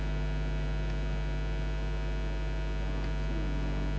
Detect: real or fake real